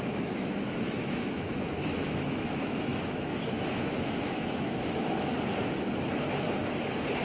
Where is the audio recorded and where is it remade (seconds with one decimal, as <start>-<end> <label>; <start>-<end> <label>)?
0.0-5.3 remade; 5.3-7.2 recorded